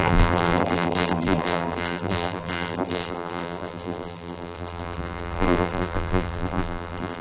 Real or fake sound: fake